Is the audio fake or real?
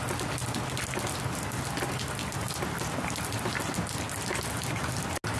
real